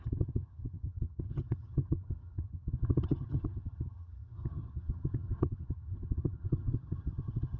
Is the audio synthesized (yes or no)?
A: yes